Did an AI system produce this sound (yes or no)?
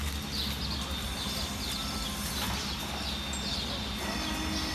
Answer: no